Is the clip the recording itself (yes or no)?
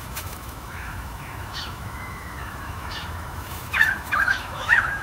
no